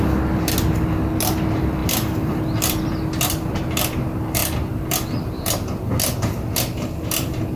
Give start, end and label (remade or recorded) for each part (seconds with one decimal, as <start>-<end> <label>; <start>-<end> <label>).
0.0-1.8 recorded; 1.8-3.6 remade; 3.6-4.4 recorded; 4.4-5.8 remade; 5.8-7.6 recorded

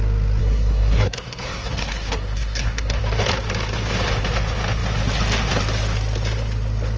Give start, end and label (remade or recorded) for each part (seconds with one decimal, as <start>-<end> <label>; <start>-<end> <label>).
0.0-0.4 recorded; 0.4-3.0 remade; 3.0-7.0 recorded

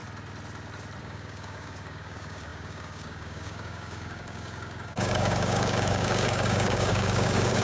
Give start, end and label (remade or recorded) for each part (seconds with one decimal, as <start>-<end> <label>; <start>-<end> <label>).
0.0-1.0 recorded; 1.0-7.6 remade